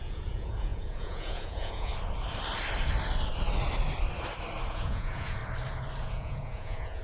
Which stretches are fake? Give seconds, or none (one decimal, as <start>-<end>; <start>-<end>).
0.0-1.9; 4.7-5.4; 6.0-7.0